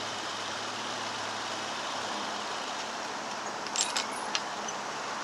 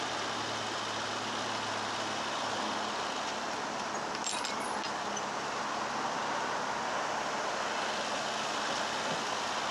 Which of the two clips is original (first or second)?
second